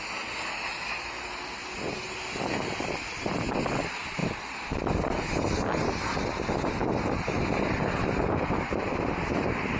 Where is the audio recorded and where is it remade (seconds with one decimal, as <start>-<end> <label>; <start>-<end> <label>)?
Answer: 0.0-9.8 recorded